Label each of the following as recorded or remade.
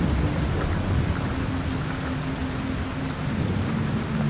recorded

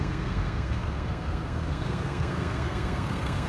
remade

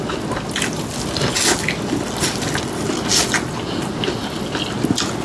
recorded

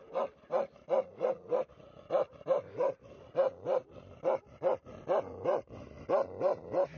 recorded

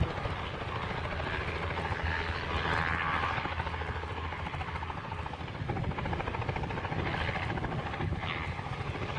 recorded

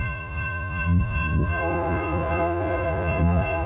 remade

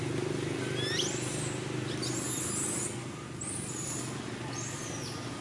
recorded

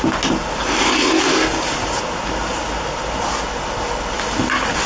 recorded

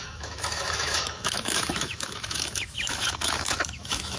remade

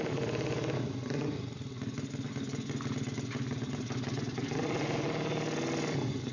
recorded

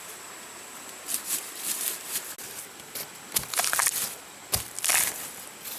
recorded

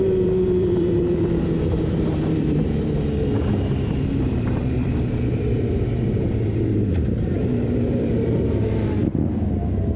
remade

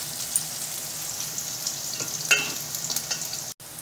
recorded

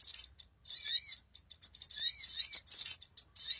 recorded